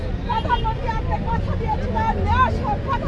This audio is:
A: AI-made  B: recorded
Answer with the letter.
B